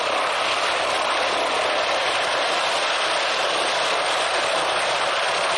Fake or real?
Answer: real